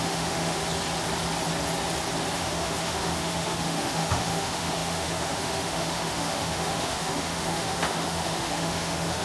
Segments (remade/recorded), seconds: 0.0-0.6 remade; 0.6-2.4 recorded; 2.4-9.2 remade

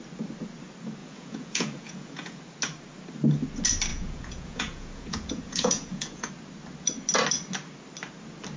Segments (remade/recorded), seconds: 0.0-1.0 recorded; 1.0-2.4 remade; 2.4-3.9 recorded; 3.9-6.3 remade; 6.3-8.6 recorded